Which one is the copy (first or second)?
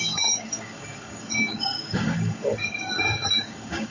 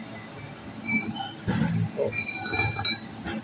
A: first